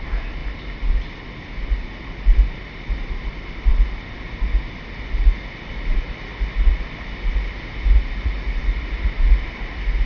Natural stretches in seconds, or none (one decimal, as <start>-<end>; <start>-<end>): 0.0-10.1